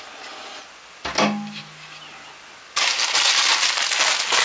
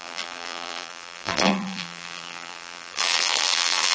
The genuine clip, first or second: first